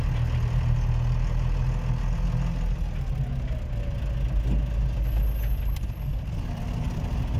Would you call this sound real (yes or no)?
yes